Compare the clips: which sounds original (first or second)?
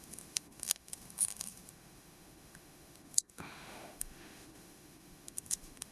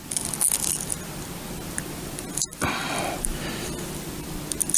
second